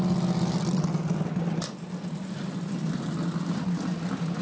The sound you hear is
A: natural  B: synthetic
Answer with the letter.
A